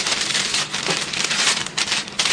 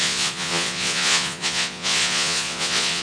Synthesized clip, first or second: second